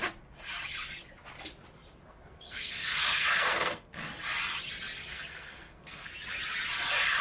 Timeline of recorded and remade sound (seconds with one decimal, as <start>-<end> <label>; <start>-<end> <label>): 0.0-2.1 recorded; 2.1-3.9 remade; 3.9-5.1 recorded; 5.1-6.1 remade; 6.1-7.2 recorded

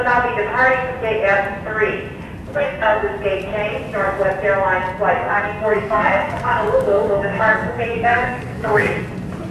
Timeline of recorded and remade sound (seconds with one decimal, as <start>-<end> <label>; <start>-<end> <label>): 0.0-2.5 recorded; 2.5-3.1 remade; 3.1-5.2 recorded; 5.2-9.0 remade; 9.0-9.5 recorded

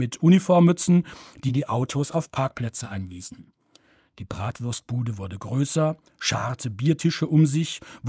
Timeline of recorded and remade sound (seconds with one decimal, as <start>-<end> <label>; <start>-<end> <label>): 0.0-1.5 recorded; 1.5-4.8 remade; 4.8-8.1 recorded

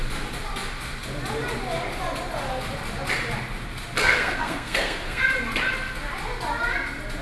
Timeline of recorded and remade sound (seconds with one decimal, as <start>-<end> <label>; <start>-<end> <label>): 0.0-4.0 recorded; 4.0-5.2 remade; 5.2-7.2 recorded